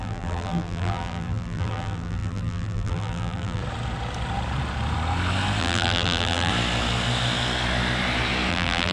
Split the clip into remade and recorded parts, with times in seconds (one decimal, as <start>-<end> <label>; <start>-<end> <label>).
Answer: 0.0-3.6 remade; 3.6-5.6 recorded; 5.6-6.5 remade; 6.5-8.5 recorded; 8.5-8.9 remade